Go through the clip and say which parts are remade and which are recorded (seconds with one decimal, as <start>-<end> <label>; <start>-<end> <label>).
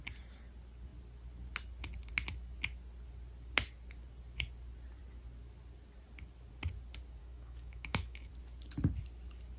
0.0-7.2 recorded; 7.2-8.3 remade; 8.3-9.6 recorded